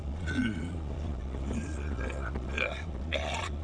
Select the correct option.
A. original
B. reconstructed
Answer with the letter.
B